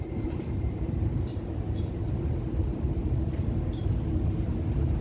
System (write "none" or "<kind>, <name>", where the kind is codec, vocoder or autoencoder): none